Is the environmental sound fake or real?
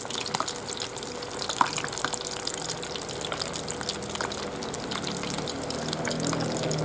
real